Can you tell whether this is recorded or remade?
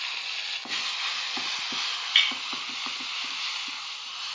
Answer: recorded